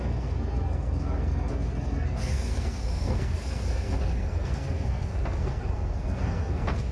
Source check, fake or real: fake